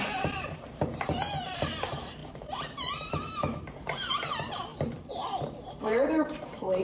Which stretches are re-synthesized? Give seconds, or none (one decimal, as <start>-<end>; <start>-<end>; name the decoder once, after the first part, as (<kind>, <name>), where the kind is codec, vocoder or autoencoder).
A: 0.0-4.7 (vocoder, BigVGAN v2); 5.5-6.8